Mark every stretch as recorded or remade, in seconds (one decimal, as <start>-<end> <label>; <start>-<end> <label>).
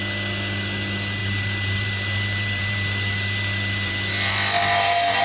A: 0.0-1.2 recorded; 1.2-4.3 remade; 4.3-5.2 recorded